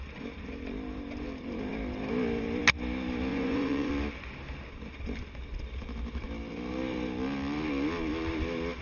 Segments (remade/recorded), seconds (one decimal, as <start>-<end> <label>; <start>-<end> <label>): 0.0-3.3 recorded; 3.3-3.9 remade; 3.9-8.8 recorded